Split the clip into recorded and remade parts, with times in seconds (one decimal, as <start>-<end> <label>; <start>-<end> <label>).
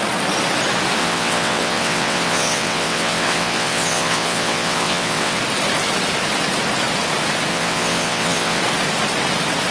0.0-1.0 recorded; 1.0-5.4 remade; 5.4-7.5 recorded; 7.5-8.6 remade; 8.6-9.7 recorded